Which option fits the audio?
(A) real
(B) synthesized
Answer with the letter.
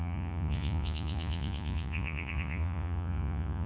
B